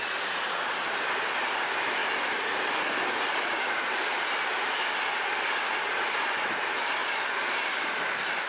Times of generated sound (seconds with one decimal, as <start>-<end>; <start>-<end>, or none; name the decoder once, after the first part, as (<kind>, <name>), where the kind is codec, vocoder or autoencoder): none